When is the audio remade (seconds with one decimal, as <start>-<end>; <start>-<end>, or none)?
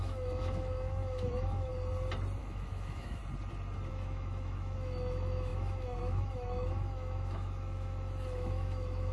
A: 0.0-1.7; 2.4-3.2; 3.9-9.1